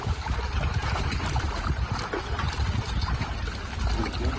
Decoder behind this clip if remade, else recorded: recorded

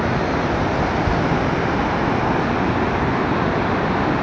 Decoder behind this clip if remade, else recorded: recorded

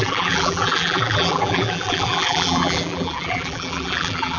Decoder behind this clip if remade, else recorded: remade, vocoder, BigVGAN v2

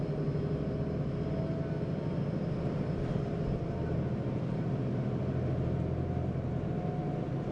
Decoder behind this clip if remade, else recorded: recorded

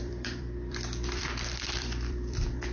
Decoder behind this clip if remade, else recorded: remade, vocoder, BigVGAN v2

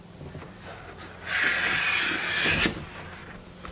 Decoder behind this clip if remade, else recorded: recorded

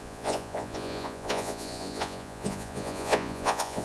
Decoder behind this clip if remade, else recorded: remade, vocoder, Vocos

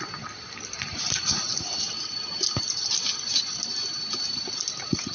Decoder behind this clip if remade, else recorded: recorded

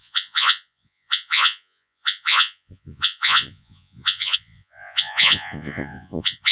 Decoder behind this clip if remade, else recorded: remade, vocoder, Vocos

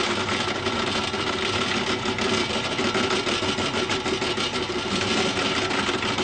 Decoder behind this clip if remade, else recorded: recorded